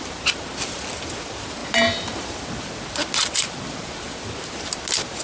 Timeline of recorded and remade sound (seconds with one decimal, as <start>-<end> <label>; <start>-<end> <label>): 0.0-1.6 recorded; 1.6-2.5 remade; 2.5-5.2 recorded